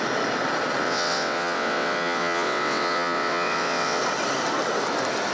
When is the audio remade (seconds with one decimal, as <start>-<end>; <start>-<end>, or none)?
0.8-4.0